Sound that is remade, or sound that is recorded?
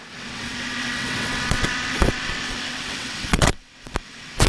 remade